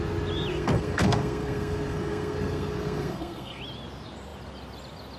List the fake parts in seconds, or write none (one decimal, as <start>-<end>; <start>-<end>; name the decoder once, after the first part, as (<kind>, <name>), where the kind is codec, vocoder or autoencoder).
0.5-3.6 (codec, SNAC)